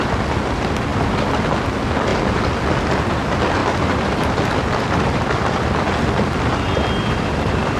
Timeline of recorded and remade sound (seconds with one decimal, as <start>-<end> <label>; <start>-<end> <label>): 0.0-3.6 recorded; 3.6-7.8 remade

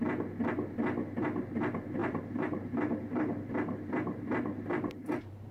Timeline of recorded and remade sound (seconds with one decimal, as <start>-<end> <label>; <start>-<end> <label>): 0.0-2.0 recorded; 2.0-5.5 remade